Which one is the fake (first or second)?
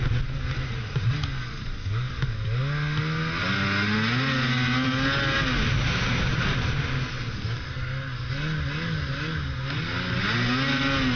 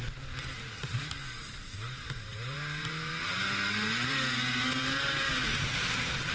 second